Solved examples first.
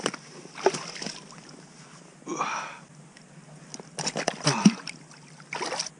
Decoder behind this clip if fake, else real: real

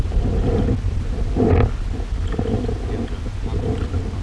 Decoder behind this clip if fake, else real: real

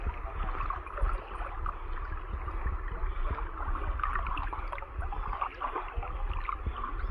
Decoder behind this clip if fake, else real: real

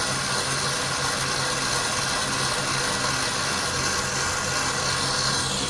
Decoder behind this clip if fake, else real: real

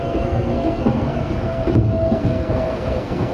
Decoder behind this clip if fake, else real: fake, codec, SNAC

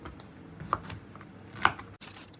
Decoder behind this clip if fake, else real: real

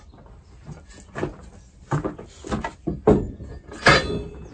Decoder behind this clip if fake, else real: real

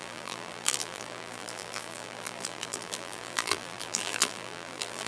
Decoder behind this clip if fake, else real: fake, vocoder, BigVGAN v2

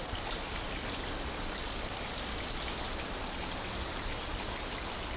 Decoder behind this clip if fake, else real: real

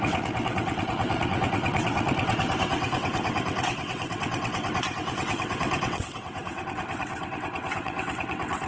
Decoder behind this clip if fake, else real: fake, vocoder, WaveNeXt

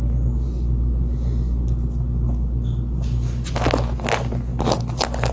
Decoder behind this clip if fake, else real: real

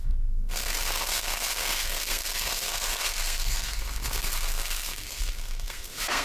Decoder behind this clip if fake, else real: fake, codec, SNAC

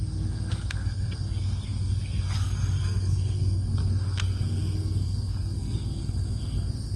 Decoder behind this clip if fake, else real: fake, codec, SNAC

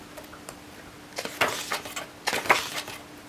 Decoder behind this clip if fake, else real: real